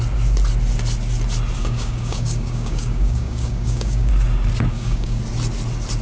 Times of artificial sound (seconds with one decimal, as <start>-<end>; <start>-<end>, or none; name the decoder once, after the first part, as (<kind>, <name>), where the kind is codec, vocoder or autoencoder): 1.6-4.1 (codec, DAC); 4.7-5.2